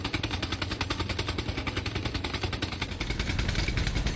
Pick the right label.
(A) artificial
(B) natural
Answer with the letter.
B